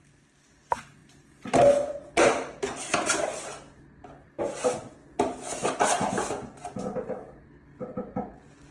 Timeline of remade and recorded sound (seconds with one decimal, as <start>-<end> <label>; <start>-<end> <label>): 0.0-8.7 recorded